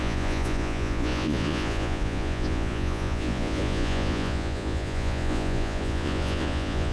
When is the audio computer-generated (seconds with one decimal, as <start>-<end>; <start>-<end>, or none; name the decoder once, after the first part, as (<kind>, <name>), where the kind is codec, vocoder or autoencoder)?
0.0-6.9 (vocoder, Vocos)